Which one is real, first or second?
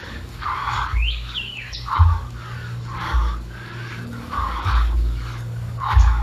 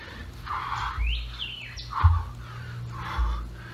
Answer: second